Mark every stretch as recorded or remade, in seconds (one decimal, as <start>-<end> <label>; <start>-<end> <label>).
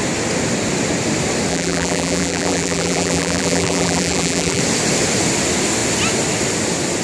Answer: 0.0-1.5 recorded; 1.5-4.6 remade; 4.6-7.0 recorded